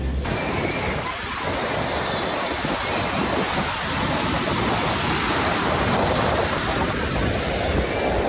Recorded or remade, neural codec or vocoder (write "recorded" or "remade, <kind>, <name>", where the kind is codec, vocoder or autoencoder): recorded